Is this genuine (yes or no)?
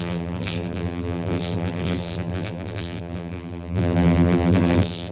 no